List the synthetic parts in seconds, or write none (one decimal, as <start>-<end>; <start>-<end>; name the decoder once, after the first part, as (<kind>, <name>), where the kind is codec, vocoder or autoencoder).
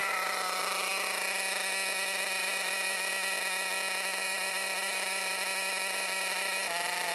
0.0-0.9 (vocoder, BigVGAN v2); 2.4-3.1; 4.2-7.1